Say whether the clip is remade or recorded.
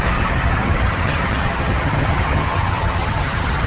remade